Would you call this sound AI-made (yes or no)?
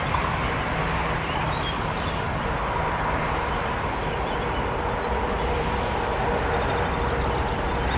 no